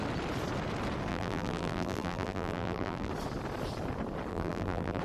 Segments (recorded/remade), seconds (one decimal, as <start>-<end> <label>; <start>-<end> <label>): 0.0-1.1 recorded; 1.1-3.1 remade; 3.1-4.3 recorded; 4.3-5.0 remade